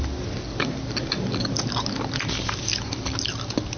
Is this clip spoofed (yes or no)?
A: no